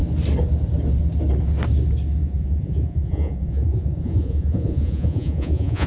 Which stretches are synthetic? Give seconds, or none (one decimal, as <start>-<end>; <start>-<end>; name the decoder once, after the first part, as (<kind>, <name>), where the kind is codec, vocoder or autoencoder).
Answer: 2.2-5.9 (vocoder, Vocos)